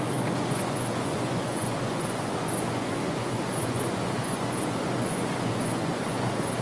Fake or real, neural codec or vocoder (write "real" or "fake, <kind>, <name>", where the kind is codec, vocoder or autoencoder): fake, vocoder, Vocos